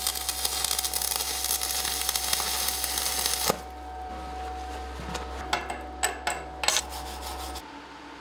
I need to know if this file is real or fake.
real